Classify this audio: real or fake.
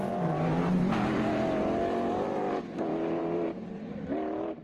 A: fake